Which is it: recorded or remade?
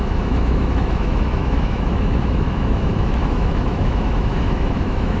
remade